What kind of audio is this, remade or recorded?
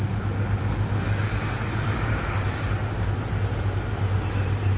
recorded